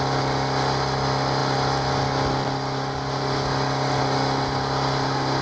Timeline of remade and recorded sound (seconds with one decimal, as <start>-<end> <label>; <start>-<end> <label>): 0.0-5.4 recorded